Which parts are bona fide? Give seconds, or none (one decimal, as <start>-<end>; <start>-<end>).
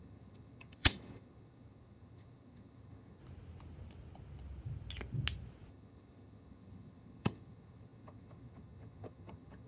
3.2-5.7